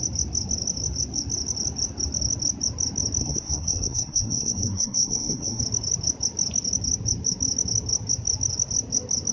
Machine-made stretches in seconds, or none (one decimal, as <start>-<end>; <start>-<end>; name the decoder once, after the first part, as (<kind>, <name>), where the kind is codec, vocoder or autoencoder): 3.2-5.6 (codec, SNAC)